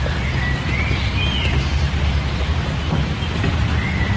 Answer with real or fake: real